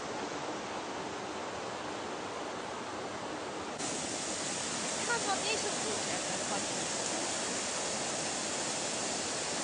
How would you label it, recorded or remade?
recorded